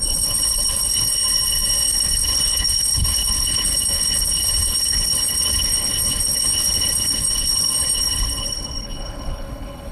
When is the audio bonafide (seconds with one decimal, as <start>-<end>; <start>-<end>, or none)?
1.2-1.9